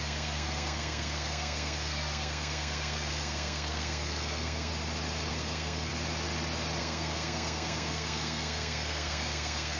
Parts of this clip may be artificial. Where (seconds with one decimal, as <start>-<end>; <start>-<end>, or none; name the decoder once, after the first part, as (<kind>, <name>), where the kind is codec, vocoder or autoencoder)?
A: 0.0-4.7 (codec, SNAC); 5.3-5.9; 6.8-9.8